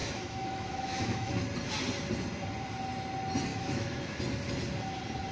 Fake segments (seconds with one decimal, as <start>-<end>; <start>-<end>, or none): 0.0-1.3; 3.5-4.2